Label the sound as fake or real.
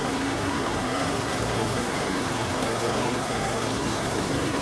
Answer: fake